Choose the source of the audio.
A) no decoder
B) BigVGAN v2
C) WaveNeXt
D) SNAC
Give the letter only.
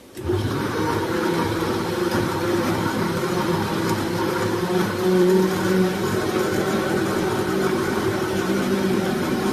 B